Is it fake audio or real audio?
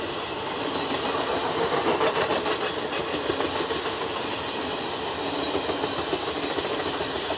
real